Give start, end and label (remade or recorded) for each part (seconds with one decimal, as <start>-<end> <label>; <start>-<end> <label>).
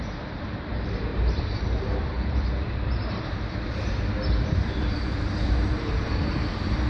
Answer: 0.0-1.1 recorded; 1.1-3.5 remade; 3.5-4.4 recorded; 4.4-6.9 remade